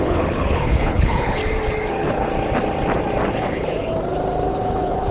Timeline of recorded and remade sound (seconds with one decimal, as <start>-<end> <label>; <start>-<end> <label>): 0.0-1.4 remade; 1.4-1.9 recorded; 1.9-2.3 remade; 2.3-3.3 recorded; 3.3-3.9 remade; 3.9-4.5 recorded; 4.5-5.1 remade